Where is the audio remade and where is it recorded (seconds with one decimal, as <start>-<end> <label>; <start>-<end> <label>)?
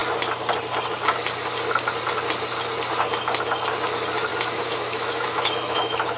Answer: 0.0-4.3 recorded; 4.3-6.2 remade